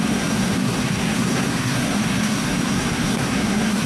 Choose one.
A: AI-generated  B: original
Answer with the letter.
A